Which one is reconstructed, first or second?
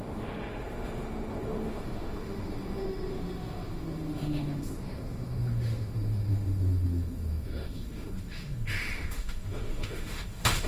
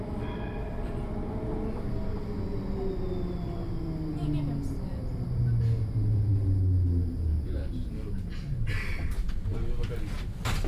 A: first